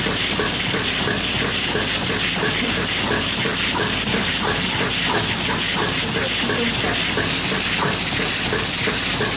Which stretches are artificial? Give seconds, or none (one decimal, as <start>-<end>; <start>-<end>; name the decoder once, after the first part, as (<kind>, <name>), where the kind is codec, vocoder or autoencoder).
none